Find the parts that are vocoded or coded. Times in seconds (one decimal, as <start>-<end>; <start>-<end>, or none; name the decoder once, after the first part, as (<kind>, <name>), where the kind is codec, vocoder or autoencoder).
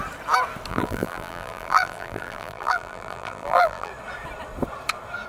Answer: 0.7-3.9 (vocoder, BigVGAN v2)